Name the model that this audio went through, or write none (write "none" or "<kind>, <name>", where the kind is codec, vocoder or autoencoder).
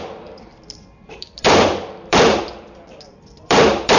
vocoder, BigVGAN v2